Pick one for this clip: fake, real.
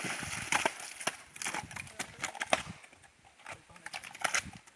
real